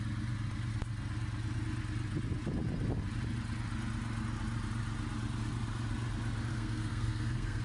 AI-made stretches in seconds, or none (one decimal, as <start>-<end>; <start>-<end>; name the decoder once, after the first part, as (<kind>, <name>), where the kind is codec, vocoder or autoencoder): 6.5-7.6 (codec, SNAC)